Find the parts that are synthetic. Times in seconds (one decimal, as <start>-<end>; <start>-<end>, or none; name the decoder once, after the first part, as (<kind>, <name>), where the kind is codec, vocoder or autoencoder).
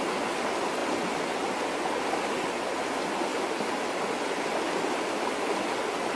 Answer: none